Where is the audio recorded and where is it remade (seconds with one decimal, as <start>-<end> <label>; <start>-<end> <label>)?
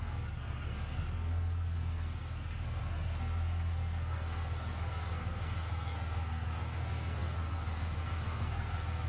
0.0-9.1 remade